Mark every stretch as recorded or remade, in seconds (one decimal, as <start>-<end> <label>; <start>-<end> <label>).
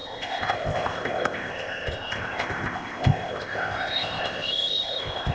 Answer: 0.0-5.3 remade